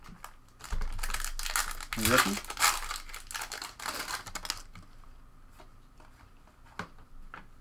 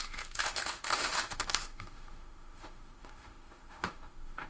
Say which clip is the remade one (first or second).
second